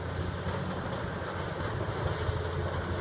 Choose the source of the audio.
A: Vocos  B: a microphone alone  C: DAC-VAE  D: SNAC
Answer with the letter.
B